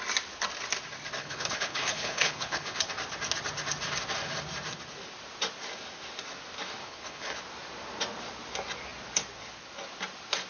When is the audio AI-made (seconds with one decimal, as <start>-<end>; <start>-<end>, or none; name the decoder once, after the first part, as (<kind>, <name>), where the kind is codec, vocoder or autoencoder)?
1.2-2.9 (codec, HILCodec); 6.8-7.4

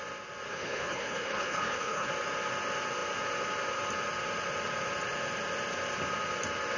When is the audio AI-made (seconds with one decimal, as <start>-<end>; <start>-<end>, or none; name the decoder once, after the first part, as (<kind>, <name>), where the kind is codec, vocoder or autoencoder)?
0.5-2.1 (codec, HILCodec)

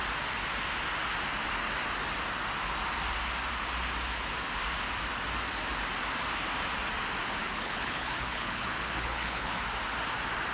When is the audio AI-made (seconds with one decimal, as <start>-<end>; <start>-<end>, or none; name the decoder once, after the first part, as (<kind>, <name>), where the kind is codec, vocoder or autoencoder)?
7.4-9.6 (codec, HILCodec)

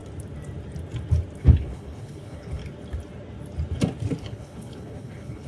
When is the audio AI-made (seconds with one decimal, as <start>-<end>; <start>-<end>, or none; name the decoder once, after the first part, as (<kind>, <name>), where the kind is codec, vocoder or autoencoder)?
1.4-2.6 (codec, HILCodec); 4.2-5.5